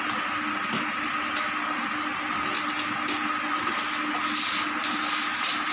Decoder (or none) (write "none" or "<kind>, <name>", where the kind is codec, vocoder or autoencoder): none